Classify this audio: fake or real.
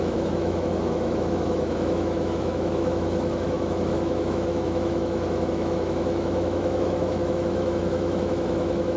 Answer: fake